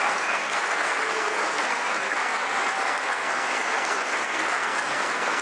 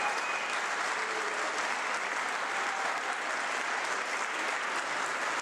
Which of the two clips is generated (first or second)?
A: first